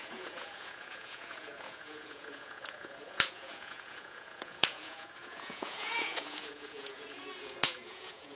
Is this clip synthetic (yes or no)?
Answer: yes